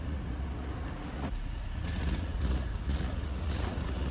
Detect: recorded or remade remade